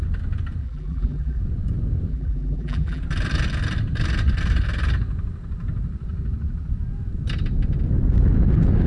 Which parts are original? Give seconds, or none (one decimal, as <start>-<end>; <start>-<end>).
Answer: 0.0-0.6; 1.4-2.1; 3.0-8.9